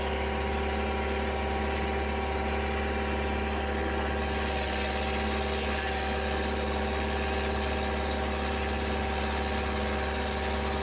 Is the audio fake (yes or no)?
no